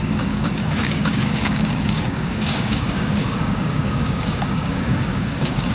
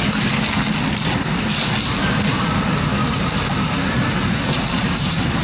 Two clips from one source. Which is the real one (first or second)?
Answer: second